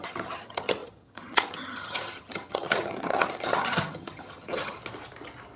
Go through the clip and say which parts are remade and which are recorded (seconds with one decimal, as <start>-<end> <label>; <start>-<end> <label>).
0.0-4.8 remade; 4.8-5.6 recorded